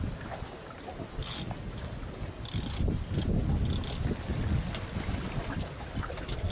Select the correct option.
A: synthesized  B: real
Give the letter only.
B